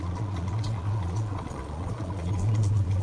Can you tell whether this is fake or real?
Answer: fake